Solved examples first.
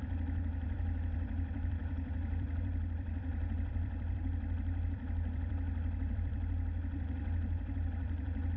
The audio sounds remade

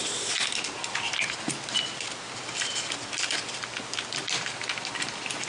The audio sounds recorded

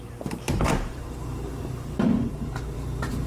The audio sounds remade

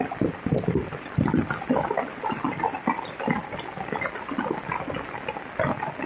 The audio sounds recorded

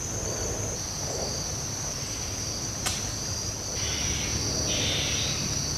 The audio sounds recorded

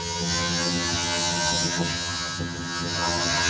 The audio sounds remade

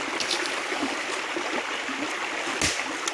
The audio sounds recorded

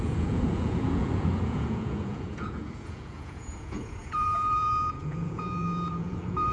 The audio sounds remade